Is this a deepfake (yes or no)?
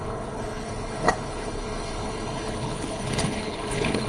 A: yes